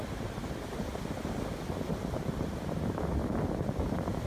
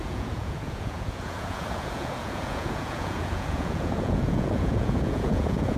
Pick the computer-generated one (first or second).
second